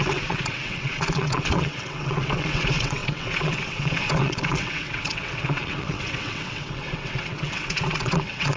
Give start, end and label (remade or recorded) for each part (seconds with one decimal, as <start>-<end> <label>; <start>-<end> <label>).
0.0-8.6 remade